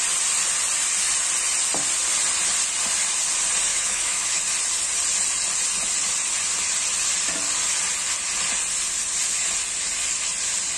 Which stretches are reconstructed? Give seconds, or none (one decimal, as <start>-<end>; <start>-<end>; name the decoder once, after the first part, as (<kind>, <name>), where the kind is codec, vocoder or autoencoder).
3.7-4.4 (autoencoder, DAC-VAE)